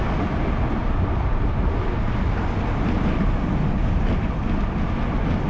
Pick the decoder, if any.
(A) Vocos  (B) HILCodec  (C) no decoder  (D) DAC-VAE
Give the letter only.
C